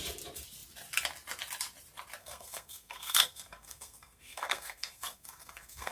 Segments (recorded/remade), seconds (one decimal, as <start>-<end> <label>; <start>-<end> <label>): 0.0-2.2 recorded; 2.2-5.9 remade